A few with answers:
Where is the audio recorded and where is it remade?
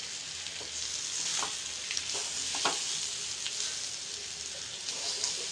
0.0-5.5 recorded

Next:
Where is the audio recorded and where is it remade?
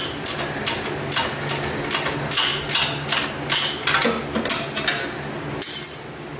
0.0-0.6 remade; 0.6-6.4 recorded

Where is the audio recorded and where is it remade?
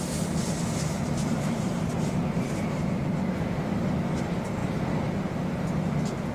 0.0-1.2 recorded; 1.2-3.1 remade; 3.1-6.3 recorded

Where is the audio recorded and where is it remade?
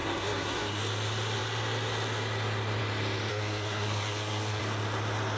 0.0-0.8 remade; 0.8-3.3 recorded; 3.3-4.6 remade; 4.6-5.4 recorded